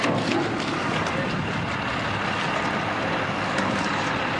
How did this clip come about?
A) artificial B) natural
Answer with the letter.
B